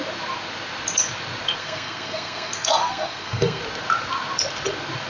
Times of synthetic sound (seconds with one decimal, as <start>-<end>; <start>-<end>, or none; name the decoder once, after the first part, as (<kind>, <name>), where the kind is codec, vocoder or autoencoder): 1.6-3.6 (codec, SNAC)